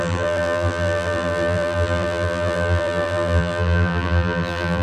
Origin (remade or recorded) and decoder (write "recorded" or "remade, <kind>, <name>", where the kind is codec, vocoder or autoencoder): remade, vocoder, BigVGAN v2